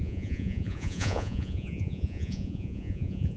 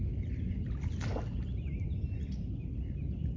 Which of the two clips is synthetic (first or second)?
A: first